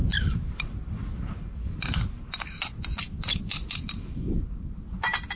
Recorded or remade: recorded